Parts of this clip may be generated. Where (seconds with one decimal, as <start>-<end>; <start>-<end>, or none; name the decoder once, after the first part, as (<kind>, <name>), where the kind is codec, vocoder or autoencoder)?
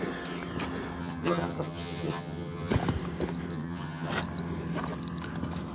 1.0-2.7 (vocoder, HiFi-GAN); 3.5-4.1